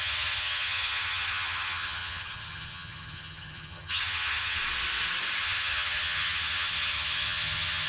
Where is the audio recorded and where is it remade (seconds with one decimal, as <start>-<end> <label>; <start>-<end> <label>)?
0.0-4.6 remade; 4.6-5.4 recorded; 5.4-7.9 remade